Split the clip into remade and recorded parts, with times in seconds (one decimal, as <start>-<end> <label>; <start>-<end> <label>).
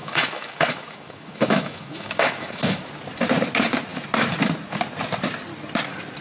0.0-2.8 remade; 2.8-6.2 recorded